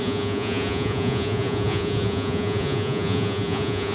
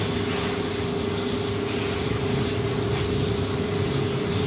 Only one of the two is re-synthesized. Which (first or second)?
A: first